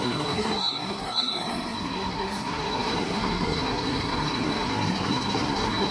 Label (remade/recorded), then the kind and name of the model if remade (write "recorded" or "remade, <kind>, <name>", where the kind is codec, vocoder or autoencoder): remade, codec, SNAC